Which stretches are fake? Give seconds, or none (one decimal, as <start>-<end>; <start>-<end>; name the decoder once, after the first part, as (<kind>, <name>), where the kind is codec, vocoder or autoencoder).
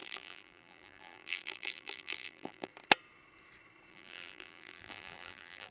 0.0-2.7 (vocoder, BigVGAN v2); 3.9-5.7